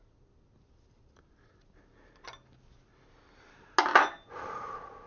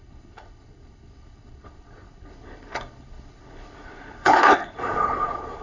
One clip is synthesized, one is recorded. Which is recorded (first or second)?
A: first